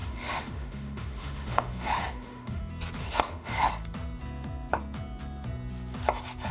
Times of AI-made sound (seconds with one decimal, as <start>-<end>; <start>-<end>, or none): 0.0-2.6; 3.0-3.7